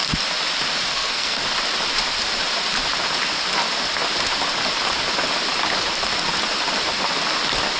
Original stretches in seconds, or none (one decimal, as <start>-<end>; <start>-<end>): 0.0-0.9; 1.4-7.8